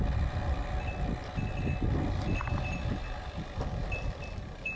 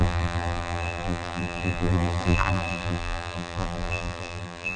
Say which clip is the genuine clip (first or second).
first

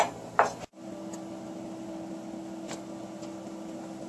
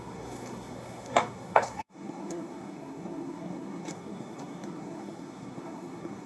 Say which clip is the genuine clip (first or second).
first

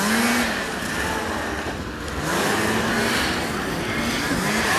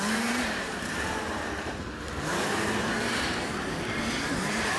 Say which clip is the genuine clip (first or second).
first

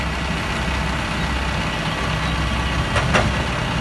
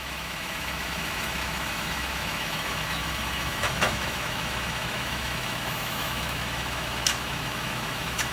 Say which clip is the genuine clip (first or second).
first